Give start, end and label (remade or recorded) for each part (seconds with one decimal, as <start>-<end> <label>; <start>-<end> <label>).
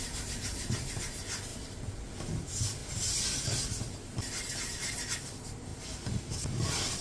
0.0-7.0 recorded